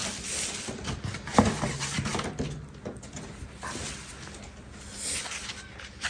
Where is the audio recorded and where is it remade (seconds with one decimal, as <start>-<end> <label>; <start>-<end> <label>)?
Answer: 0.0-6.1 recorded